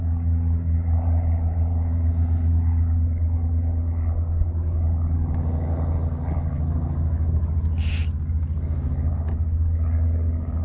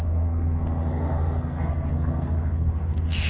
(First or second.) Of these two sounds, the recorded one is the first